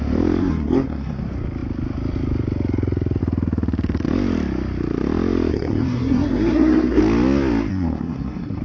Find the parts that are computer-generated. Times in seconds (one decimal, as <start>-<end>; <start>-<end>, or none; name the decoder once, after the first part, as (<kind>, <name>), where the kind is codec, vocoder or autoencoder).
0.4-1.2 (codec, SNAC); 5.5-7.0; 7.7-8.6